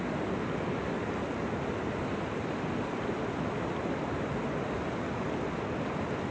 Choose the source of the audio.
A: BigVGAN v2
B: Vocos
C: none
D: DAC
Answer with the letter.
C